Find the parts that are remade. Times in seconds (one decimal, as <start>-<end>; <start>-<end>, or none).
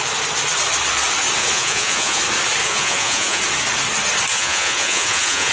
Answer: 1.4-2.2; 2.6-3.4; 4.3-5.5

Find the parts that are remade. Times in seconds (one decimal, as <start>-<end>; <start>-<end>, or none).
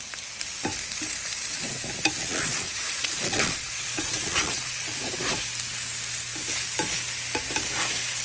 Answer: 2.2-5.0